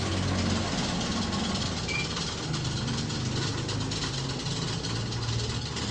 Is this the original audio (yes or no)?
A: yes